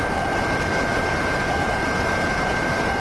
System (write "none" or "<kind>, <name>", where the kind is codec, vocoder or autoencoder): none